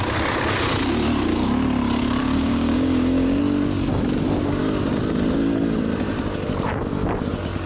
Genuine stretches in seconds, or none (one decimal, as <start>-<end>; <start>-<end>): 0.0-2.2; 3.4-7.7